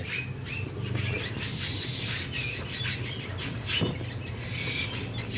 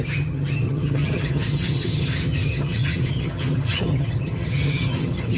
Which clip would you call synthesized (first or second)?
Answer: second